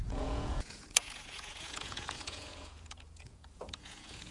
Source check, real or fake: fake